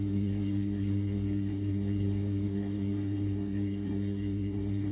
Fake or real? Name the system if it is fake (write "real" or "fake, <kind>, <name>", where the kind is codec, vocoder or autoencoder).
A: fake, codec, SNAC